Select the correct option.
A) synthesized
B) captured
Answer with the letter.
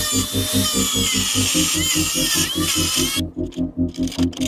B